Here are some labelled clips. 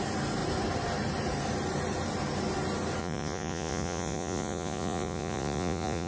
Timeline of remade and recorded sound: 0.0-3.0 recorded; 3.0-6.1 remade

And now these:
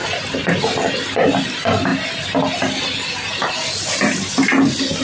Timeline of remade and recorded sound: 0.0-5.0 recorded